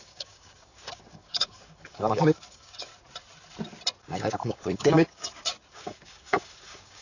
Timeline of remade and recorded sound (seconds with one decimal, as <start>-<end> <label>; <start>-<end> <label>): 0.0-2.9 remade; 2.9-4.0 recorded; 4.0-7.0 remade